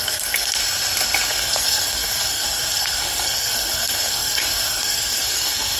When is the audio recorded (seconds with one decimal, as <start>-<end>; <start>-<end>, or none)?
0.6-1.3